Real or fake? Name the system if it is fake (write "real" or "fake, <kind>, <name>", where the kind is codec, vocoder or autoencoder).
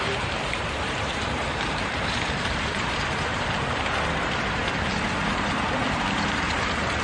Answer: fake, vocoder, BigVGAN v2